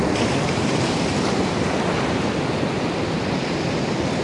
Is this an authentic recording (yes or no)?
no